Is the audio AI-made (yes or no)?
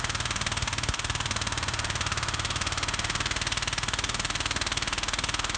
yes